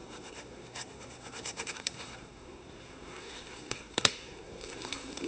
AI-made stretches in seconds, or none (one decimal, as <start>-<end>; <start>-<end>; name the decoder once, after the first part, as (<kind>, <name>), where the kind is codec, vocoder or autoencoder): 0.0-5.3 (codec, SNAC)